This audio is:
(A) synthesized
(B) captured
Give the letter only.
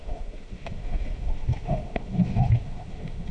A